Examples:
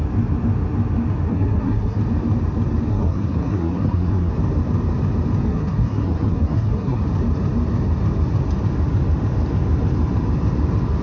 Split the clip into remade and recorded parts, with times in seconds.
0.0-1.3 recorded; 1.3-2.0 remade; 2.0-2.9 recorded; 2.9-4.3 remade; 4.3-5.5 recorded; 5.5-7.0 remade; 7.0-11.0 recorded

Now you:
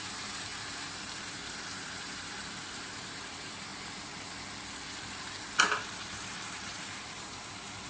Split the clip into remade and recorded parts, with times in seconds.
0.0-3.7 remade; 3.7-5.6 recorded; 5.6-7.9 remade

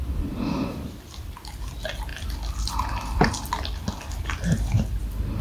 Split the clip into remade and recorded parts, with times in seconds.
0.0-5.4 recorded

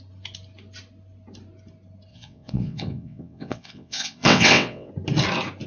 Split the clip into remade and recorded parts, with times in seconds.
0.0-2.1 recorded; 2.1-4.9 remade; 4.9-5.7 recorded